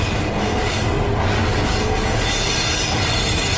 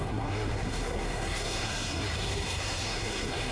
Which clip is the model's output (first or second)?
second